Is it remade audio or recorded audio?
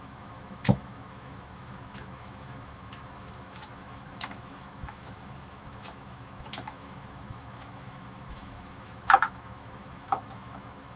remade